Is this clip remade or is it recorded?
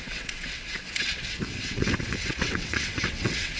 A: remade